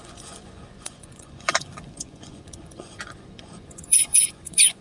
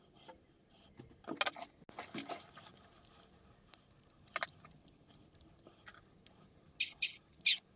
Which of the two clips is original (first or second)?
second